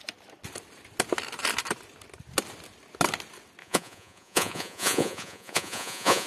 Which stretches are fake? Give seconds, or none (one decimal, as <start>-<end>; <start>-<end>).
3.6-6.3